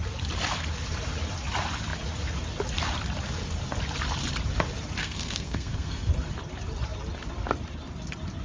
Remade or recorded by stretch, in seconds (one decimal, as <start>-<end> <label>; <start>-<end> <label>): 0.0-5.0 recorded; 5.0-6.1 remade; 6.1-8.4 recorded